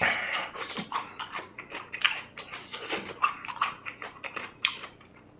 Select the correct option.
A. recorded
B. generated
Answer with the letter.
B